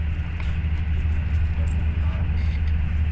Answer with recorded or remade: recorded